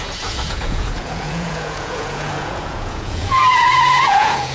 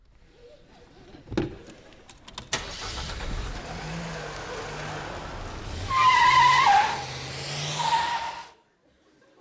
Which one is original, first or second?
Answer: second